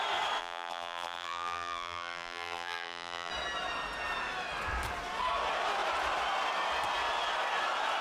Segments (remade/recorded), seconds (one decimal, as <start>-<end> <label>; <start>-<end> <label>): 0.0-0.4 recorded; 0.4-3.3 remade; 3.3-8.0 recorded